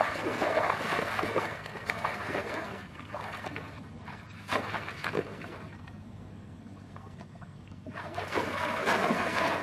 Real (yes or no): no